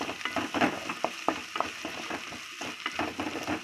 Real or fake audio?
real